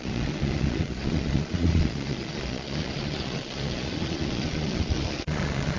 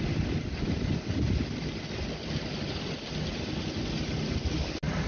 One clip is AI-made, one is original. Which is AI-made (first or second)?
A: first